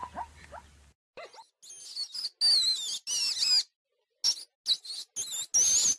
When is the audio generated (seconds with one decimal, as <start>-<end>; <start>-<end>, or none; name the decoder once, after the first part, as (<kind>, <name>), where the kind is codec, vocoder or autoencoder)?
none